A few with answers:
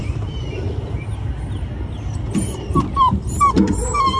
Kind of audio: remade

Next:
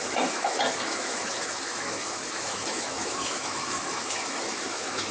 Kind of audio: remade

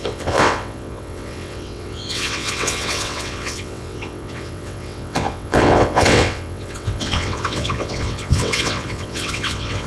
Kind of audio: remade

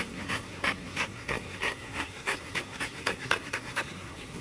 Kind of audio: remade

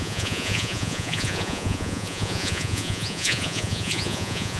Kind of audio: remade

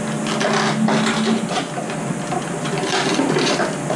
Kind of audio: recorded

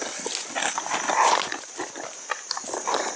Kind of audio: recorded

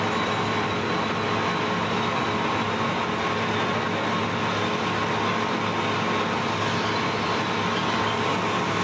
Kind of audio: recorded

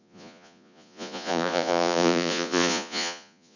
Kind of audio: remade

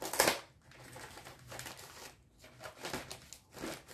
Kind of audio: recorded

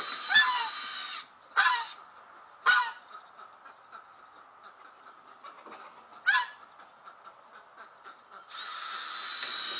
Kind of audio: recorded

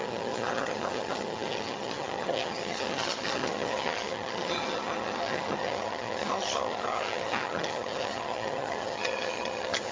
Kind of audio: remade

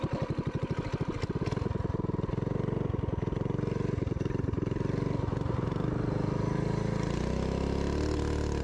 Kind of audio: recorded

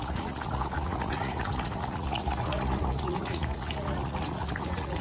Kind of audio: remade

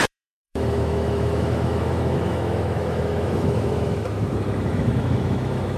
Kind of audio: remade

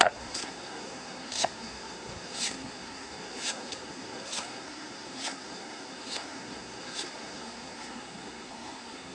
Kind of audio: remade